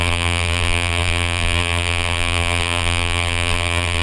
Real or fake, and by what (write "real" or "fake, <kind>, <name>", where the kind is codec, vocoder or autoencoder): fake, vocoder, BigVGAN v2